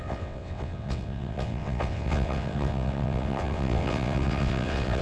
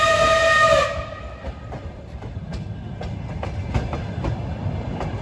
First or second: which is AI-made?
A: first